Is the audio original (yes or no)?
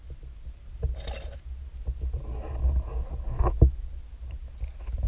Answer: yes